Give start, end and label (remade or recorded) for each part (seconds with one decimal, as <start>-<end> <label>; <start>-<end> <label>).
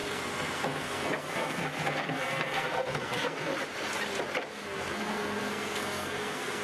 0.0-3.5 remade; 3.5-4.5 recorded; 4.5-6.6 remade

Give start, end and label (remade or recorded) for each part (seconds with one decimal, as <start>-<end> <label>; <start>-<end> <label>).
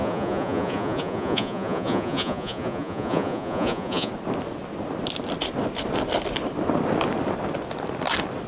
0.0-4.1 remade; 4.1-8.5 recorded